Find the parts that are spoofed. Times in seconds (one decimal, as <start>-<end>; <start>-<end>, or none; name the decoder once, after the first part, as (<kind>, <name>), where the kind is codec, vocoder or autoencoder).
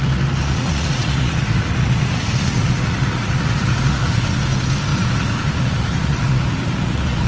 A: 0.4-4.5 (vocoder, Vocos); 4.9-7.3